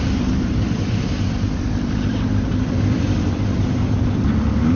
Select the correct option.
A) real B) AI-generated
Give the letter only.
B